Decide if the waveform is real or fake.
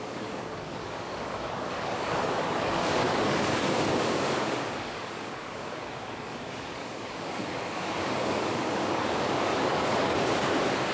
fake